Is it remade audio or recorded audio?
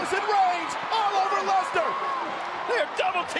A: recorded